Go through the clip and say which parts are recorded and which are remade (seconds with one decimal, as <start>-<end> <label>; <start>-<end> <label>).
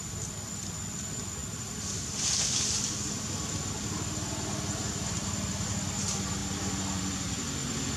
0.0-8.0 recorded